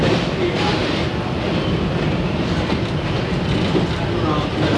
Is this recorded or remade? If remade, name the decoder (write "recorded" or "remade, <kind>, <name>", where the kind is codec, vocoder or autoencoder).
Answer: recorded